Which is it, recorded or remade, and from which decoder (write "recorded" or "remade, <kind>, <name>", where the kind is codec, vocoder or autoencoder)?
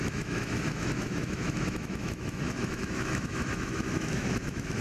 remade, autoencoder, DAC-VAE